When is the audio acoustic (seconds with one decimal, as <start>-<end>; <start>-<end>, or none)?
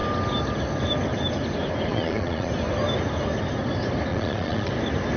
0.0-1.9; 2.5-4.1; 4.7-5.2